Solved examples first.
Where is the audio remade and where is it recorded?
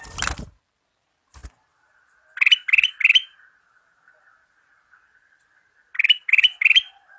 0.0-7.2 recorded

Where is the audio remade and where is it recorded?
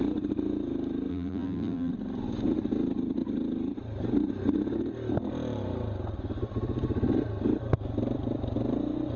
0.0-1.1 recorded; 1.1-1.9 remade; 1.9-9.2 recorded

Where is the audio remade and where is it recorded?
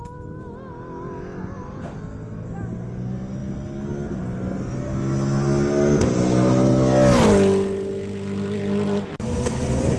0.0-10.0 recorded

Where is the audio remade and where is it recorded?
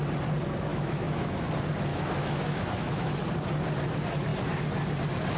0.0-0.7 recorded; 0.7-1.5 remade; 1.5-1.9 recorded; 1.9-3.2 remade; 3.2-5.4 recorded